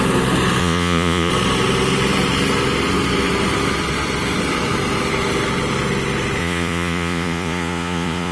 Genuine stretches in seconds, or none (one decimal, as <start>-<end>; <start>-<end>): 0.0-0.6; 1.3-6.4